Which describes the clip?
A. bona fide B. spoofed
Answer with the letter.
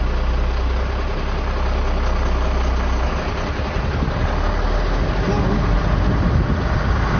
A